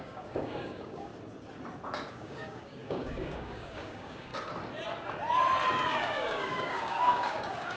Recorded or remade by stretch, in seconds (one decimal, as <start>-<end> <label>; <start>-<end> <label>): 0.0-1.1 remade; 1.1-2.1 recorded; 2.1-4.3 remade; 4.3-5.9 recorded; 5.9-7.8 remade